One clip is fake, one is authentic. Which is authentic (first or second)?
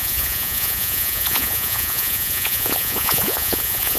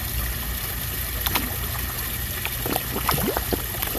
second